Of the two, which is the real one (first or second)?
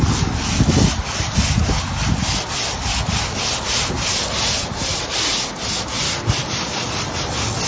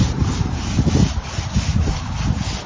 first